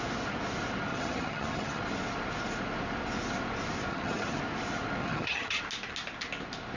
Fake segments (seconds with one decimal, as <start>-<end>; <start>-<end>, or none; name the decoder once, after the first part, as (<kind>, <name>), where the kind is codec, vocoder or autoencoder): 0.9-1.8 (vocoder, HiFi-GAN); 3.9-4.4; 5.0-5.6